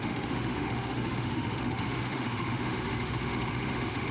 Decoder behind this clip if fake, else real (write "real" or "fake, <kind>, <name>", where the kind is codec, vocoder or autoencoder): fake, autoencoder, DAC-VAE